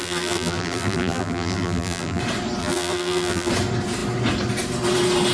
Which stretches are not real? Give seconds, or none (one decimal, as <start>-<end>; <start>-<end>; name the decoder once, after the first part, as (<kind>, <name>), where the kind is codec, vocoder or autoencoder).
0.0-2.2 (vocoder, BigVGAN v2); 2.6-3.5